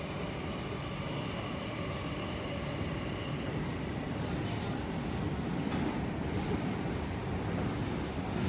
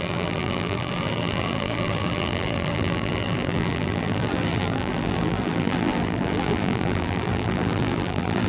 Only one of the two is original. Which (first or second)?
first